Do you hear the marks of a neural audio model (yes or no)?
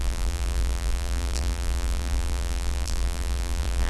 yes